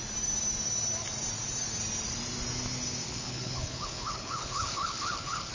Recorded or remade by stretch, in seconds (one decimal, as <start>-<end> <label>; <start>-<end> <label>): 0.0-3.1 recorded; 3.1-5.5 remade